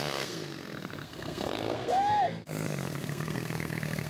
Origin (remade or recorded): remade